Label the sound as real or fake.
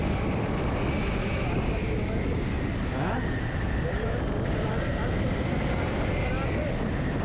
real